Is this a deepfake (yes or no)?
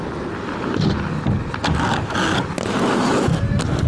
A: no